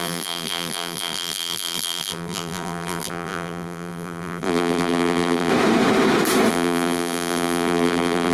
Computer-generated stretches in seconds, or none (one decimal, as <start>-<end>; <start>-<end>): 0.0-5.5; 6.5-8.3